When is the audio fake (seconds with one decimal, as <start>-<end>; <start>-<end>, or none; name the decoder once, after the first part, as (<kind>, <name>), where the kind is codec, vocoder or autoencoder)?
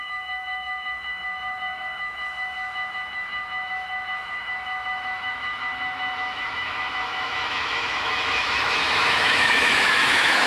0.0-10.5 (autoencoder, DAC-VAE)